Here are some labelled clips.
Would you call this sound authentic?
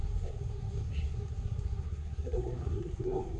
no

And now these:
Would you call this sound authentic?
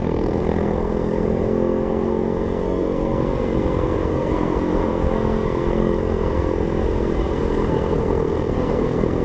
no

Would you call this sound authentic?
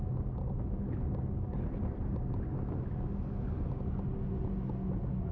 yes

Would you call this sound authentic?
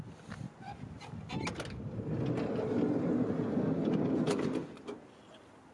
yes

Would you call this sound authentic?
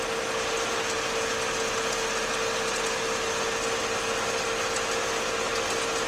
yes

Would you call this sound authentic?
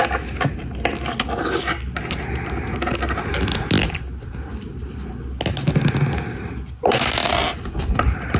yes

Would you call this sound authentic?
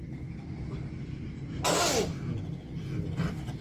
yes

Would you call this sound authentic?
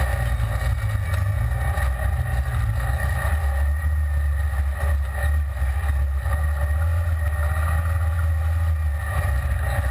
yes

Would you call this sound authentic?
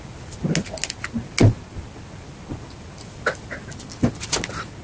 yes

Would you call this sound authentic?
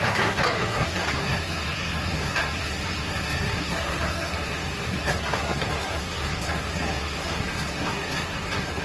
no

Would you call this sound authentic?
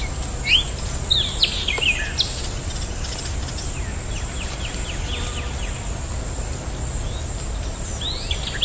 yes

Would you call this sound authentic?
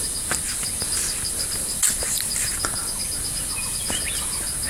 yes